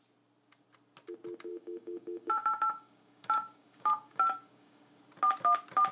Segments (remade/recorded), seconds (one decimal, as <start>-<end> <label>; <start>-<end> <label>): 0.0-1.5 recorded; 1.5-5.0 remade; 5.0-5.9 recorded